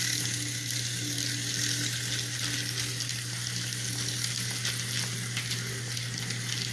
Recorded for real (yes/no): yes